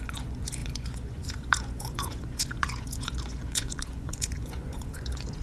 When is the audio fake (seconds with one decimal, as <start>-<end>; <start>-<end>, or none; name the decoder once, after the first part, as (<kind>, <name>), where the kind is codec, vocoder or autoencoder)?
0.0-5.4 (vocoder, Vocos)